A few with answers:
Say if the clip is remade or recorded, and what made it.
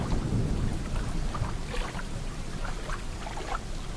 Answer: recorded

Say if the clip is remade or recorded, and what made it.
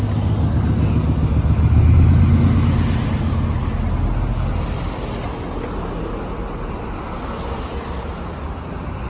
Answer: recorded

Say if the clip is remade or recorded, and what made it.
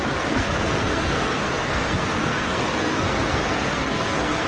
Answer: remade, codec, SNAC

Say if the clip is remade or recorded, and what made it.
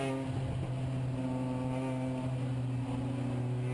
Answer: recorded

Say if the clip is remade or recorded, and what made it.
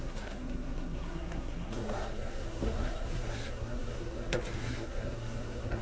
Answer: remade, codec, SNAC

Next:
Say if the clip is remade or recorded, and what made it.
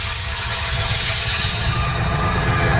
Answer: remade, vocoder, HiFi-GAN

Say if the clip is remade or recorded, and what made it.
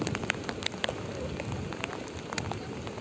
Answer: recorded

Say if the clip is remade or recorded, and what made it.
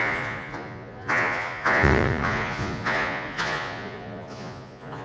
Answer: remade, vocoder, Vocos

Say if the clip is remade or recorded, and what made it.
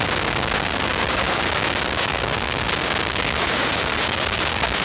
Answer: remade, codec, DAC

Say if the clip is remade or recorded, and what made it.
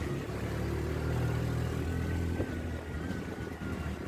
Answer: recorded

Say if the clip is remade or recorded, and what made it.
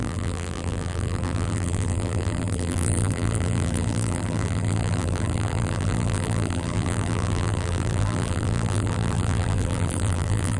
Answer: remade, vocoder, BigVGAN v2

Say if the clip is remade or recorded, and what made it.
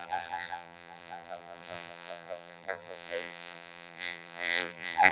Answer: remade, vocoder, BigVGAN v2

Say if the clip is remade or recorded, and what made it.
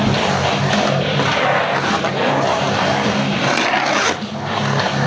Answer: recorded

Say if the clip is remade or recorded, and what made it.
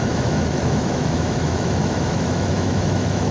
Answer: remade, autoencoder, DAC-VAE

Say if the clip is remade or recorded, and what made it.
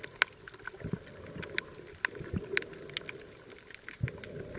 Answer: recorded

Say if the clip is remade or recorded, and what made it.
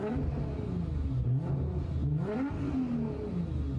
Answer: recorded